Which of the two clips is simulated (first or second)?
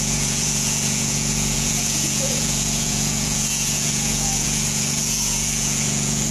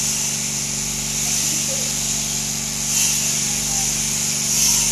first